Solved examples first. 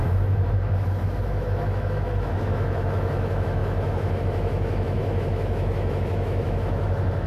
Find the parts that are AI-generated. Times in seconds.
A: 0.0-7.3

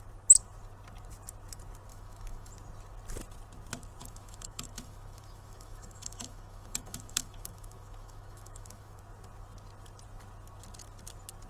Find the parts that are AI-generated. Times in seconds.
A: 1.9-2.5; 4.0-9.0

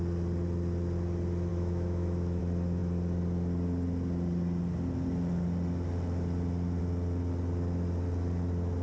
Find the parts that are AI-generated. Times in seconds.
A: 1.5-2.4

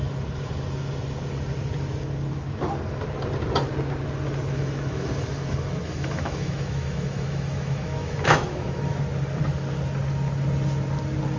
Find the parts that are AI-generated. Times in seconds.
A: 4.5-9.0